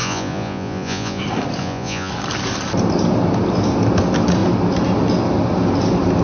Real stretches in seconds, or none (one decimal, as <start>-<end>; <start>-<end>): 1.2-1.6; 2.1-6.2